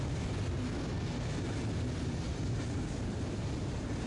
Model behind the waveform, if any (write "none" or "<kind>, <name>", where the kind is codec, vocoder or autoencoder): none